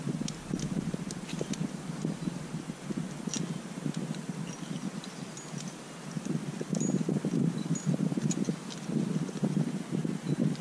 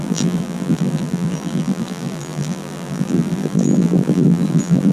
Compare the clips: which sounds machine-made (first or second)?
second